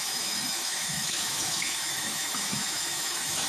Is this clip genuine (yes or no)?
no